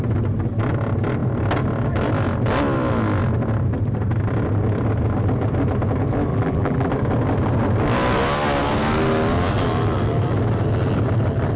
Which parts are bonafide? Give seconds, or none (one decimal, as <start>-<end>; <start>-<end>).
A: 0.0-6.3; 6.9-11.6